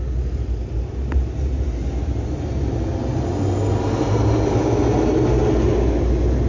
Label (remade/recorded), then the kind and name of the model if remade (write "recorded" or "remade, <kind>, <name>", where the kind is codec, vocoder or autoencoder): recorded